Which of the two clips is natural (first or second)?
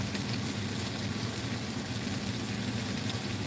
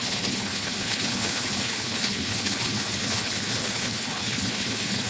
first